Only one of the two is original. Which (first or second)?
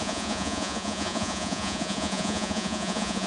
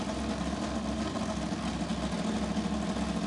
second